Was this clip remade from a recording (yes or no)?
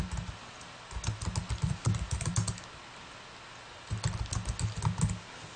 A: no